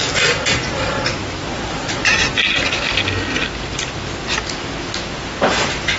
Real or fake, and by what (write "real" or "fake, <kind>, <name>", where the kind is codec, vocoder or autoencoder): real